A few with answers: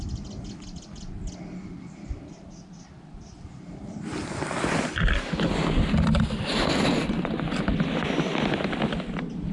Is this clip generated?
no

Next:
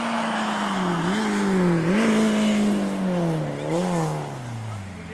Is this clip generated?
no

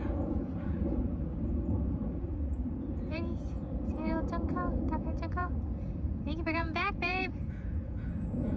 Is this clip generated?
yes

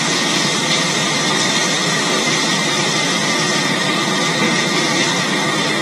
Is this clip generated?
no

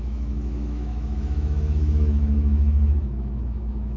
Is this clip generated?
yes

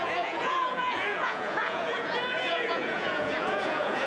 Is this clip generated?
yes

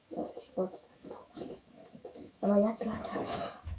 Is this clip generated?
yes